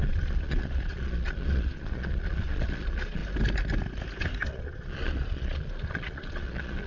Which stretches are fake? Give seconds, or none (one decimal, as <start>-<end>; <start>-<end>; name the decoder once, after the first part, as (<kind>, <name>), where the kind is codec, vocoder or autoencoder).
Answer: 0.0-3.2 (vocoder, Vocos); 4.5-6.9